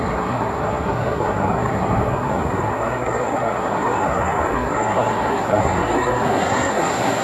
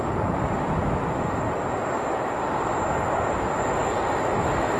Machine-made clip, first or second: first